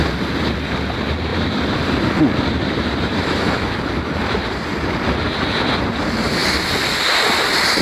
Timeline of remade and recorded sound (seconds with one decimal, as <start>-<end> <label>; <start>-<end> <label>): 0.0-2.6 recorded; 2.6-3.8 remade; 3.8-7.8 recorded